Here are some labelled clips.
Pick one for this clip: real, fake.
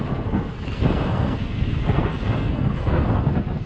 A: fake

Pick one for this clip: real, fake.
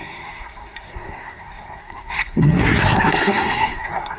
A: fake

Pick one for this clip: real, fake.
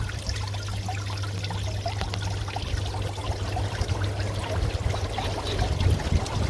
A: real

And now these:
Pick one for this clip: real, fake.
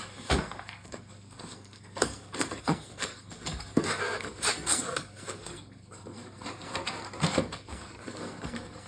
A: fake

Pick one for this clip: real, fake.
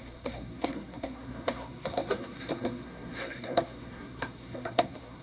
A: fake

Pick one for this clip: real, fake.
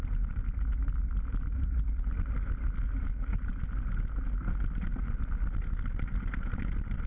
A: real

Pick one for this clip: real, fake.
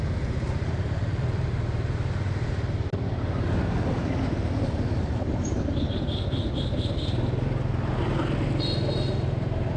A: real